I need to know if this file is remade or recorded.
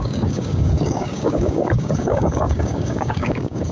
remade